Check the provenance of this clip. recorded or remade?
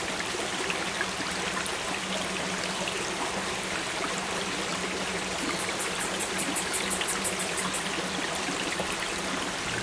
recorded